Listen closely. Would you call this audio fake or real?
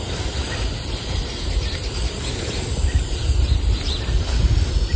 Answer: real